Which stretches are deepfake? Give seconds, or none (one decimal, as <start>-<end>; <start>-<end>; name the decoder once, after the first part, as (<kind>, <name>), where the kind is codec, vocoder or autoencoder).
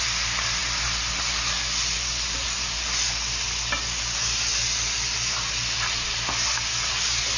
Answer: none